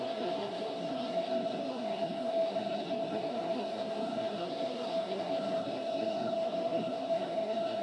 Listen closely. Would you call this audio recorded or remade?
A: remade